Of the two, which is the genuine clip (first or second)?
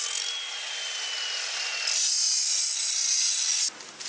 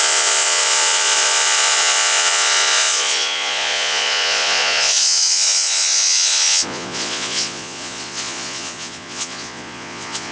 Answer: first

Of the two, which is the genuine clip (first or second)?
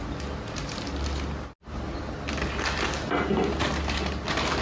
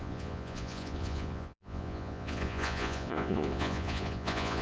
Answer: first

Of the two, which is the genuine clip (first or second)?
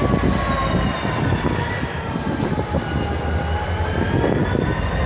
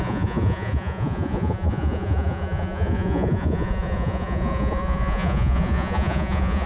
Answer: first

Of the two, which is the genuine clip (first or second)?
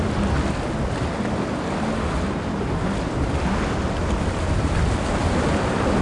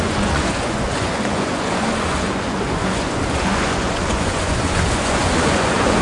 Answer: first